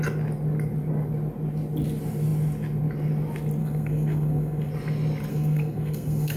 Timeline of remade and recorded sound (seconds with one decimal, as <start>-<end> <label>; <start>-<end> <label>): 0.0-3.6 recorded; 3.6-4.7 remade; 4.7-5.3 recorded; 5.3-6.4 remade